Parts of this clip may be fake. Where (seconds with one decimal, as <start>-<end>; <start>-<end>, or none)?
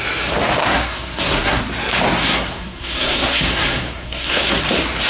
0.6-1.6; 2.2-4.6